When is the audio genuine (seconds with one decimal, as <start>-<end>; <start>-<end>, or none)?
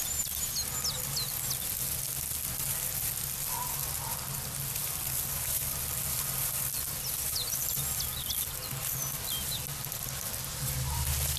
0.0-11.4